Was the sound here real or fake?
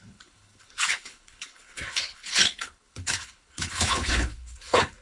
fake